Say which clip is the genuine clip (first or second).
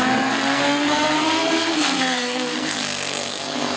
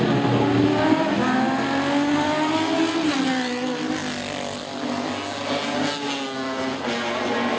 second